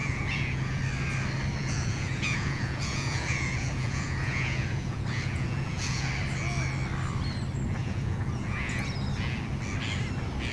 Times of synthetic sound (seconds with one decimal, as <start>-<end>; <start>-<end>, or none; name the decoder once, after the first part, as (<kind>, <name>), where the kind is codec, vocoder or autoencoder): 0.0-0.8 (vocoder, Vocos); 1.6-6.1; 7.8-8.9